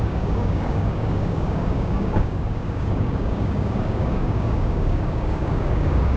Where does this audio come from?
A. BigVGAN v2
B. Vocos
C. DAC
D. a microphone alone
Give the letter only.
C